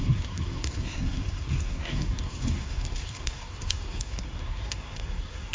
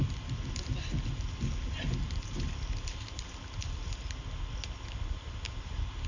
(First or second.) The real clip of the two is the second